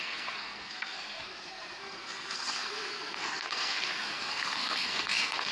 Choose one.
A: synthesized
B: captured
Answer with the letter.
A